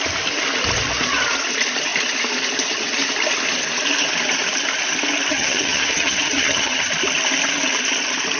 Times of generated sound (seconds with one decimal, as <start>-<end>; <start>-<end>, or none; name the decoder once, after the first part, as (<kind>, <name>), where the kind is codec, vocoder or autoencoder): 5.3-6.9 (vocoder, HiFi-GAN)